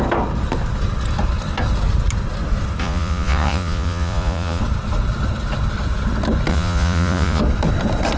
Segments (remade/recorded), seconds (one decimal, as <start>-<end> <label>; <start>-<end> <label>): 0.0-2.8 recorded; 2.8-4.6 remade; 4.6-6.5 recorded; 6.5-7.4 remade; 7.4-8.2 recorded